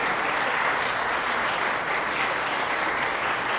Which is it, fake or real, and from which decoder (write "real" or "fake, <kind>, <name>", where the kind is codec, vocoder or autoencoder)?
real